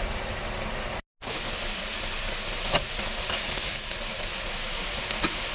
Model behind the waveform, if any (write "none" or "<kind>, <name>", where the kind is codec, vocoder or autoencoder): none